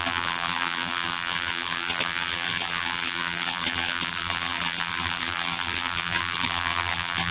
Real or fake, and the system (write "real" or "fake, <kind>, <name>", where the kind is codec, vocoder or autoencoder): fake, vocoder, BigVGAN v2